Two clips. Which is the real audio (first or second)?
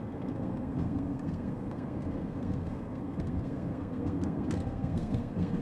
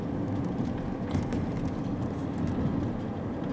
second